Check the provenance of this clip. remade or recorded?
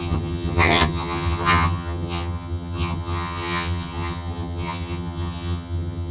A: remade